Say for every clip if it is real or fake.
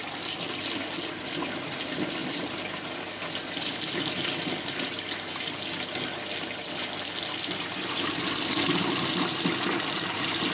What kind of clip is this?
real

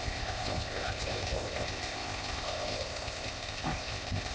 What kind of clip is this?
fake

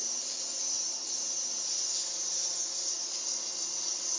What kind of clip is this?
real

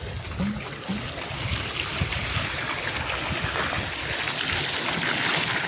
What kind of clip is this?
real